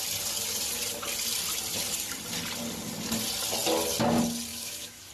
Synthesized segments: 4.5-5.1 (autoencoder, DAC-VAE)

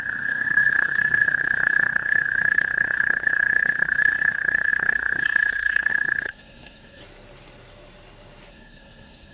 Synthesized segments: 0.0-7.0 (codec, SNAC); 8.5-9.3